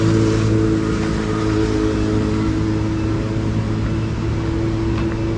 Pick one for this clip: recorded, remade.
recorded